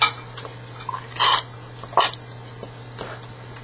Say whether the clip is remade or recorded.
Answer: recorded